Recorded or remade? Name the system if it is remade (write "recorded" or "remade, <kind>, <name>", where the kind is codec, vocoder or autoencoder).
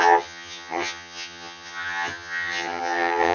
remade, vocoder, HiFi-GAN